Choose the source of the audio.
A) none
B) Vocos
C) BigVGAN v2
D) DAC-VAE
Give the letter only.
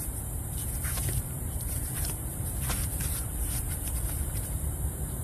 C